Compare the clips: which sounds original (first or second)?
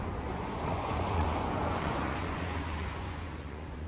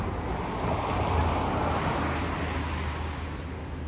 second